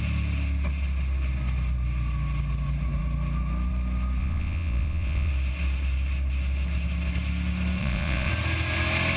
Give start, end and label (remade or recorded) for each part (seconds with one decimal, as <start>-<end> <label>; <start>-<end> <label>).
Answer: 0.0-4.2 recorded; 4.2-5.3 remade; 5.3-7.8 recorded; 7.8-8.3 remade; 8.3-9.2 recorded